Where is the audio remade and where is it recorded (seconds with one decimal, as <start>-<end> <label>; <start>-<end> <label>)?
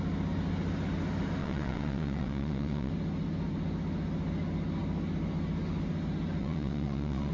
0.0-1.4 recorded; 1.4-2.9 remade; 2.9-6.4 recorded; 6.4-7.3 remade